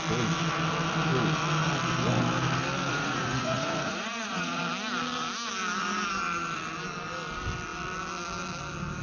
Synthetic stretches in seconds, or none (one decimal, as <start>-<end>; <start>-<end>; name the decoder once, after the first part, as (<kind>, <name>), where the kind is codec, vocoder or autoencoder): 2.9-4.6 (vocoder, Vocos)

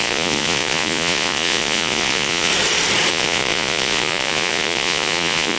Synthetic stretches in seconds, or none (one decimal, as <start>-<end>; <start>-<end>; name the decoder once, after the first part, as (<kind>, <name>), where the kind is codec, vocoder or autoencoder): 0.0-2.5 (vocoder, Vocos); 3.1-5.6

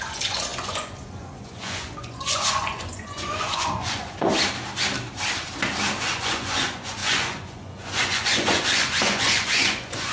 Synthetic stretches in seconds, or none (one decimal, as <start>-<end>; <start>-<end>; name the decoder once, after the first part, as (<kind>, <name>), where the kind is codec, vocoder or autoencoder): 0.0-4.3 (vocoder, Vocos); 6.0-10.1

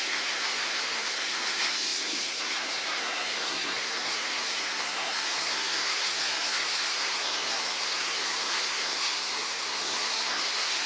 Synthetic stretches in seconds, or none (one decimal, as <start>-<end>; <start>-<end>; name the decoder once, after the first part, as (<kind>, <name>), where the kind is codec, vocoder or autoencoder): 0.0-10.9 (codec, SNAC)

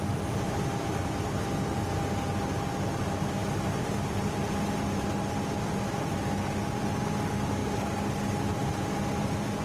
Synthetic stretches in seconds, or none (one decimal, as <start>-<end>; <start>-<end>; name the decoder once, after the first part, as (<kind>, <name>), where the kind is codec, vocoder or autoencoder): none